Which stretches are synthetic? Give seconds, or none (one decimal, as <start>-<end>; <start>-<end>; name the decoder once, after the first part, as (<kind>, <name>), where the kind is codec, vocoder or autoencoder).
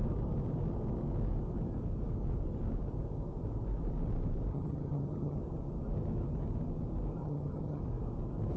4.5-5.4 (vocoder, HiFi-GAN); 7.2-7.8